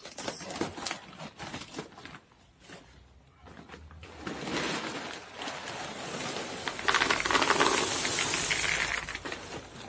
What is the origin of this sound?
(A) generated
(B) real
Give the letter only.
B